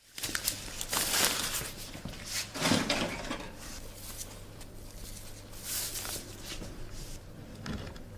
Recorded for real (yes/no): no